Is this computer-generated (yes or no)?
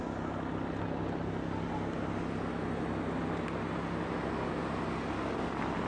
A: no